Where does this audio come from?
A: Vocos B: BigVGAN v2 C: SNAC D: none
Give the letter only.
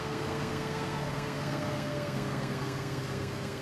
C